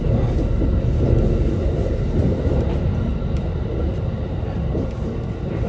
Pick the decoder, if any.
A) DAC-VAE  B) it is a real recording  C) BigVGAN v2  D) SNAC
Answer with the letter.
B